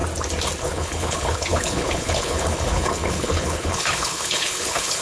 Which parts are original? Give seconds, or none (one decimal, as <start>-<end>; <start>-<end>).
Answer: 0.0-0.6